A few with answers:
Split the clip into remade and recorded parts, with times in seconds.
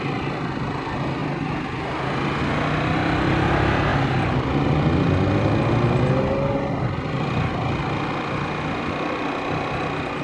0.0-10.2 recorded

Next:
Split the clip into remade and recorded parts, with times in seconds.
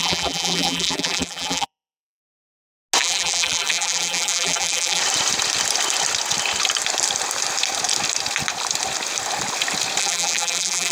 0.0-2.2 remade; 2.2-3.0 recorded; 3.0-5.0 remade; 5.0-10.0 recorded; 10.0-10.9 remade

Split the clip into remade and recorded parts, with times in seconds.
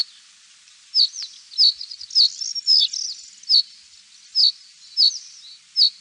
0.0-6.0 recorded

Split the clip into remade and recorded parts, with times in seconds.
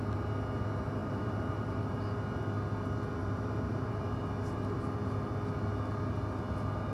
0.0-1.0 recorded; 1.0-2.0 remade; 2.0-3.2 recorded; 3.2-4.0 remade; 4.0-6.9 recorded